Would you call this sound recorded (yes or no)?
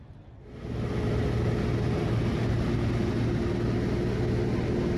yes